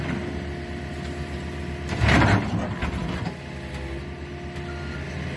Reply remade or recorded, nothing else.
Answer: recorded